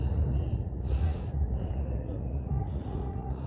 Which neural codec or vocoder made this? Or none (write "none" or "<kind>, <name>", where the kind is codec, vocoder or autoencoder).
vocoder, Vocos